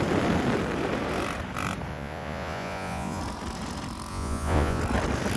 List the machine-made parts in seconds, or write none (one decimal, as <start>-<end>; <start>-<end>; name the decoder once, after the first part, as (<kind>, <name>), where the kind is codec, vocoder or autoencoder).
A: 1.9-3.2 (vocoder, Vocos); 4.1-4.8